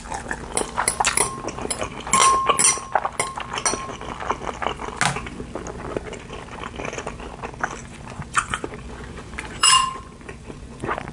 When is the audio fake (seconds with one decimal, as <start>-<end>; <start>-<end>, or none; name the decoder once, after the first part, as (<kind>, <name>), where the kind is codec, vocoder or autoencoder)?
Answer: 7.8-11.1 (vocoder, Vocos)